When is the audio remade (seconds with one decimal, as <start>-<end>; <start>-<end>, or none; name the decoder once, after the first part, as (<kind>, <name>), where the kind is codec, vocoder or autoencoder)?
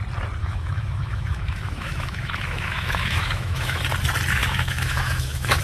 0.4-3.8 (autoencoder, DAC-VAE); 4.4-5.6